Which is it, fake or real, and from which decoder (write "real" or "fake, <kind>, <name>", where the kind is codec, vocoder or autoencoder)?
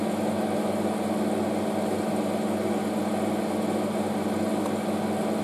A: real